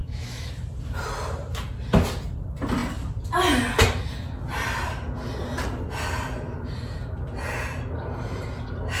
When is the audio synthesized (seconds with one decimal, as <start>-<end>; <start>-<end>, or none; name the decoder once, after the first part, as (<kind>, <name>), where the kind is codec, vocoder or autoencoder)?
0.0-0.5 (autoencoder, DAC-VAE)